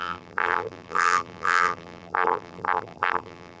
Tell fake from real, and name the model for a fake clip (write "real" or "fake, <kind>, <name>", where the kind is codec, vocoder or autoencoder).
fake, vocoder, BigVGAN v2